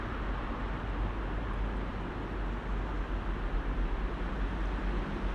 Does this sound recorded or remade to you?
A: recorded